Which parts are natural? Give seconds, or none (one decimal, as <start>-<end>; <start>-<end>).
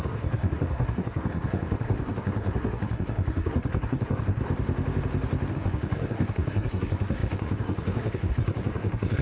4.4-5.5